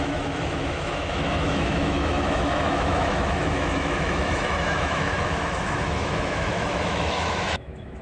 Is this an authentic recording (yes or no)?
no